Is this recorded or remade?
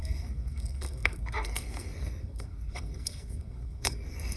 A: remade